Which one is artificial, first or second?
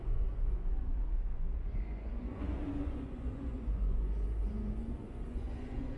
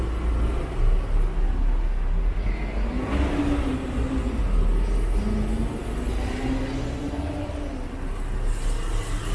first